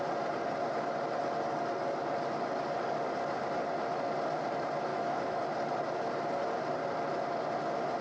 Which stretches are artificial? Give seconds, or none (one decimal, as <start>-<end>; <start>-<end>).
4.9-5.4